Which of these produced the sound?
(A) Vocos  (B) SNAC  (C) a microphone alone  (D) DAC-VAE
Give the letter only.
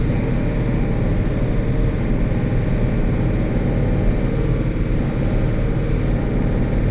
C